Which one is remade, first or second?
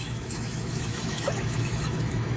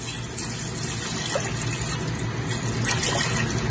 first